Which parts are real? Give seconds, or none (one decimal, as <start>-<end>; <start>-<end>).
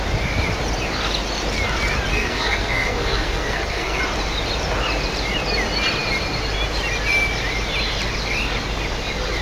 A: 0.0-2.1; 4.0-9.4